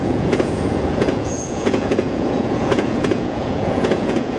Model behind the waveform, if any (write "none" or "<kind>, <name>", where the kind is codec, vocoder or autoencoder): vocoder, Vocos